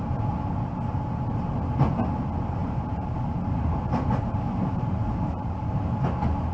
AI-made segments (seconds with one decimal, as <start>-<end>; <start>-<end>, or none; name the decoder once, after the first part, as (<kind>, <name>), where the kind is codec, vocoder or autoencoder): 2.6-5.8 (vocoder, BigVGAN v2)